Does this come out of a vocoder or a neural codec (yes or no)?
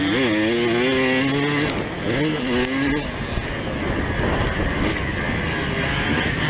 no